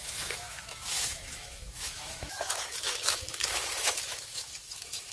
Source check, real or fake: fake